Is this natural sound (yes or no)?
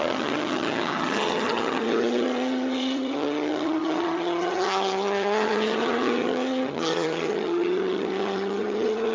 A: no